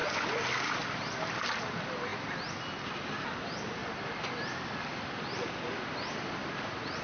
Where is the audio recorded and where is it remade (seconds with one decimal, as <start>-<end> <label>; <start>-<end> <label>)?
0.0-7.0 recorded